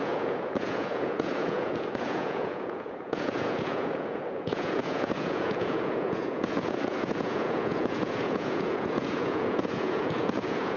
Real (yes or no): no